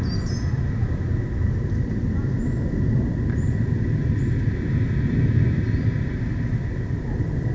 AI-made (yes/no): no